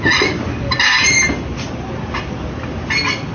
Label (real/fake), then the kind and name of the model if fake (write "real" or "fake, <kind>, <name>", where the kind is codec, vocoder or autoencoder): real